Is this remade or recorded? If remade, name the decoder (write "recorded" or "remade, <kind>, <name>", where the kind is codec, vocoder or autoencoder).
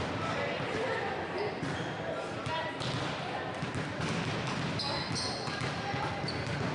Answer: recorded